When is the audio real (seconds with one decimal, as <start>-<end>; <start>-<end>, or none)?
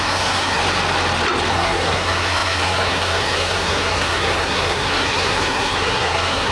0.6-1.5